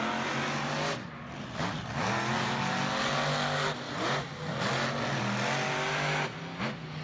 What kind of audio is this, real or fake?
real